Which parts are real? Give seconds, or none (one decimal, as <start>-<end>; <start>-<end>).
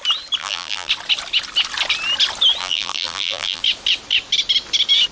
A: 0.0-0.4; 0.9-2.6; 3.6-5.1